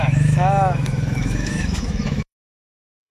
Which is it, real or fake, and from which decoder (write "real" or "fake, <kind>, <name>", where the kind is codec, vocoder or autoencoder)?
fake, autoencoder, DAC-VAE